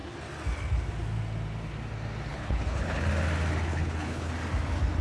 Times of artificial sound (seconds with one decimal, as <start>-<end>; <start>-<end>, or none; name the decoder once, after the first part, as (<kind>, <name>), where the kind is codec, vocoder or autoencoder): 2.3-3.0 (codec, HILCodec); 3.7-4.3